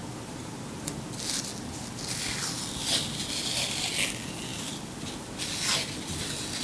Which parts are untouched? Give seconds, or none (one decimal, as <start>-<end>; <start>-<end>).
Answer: 0.0-6.6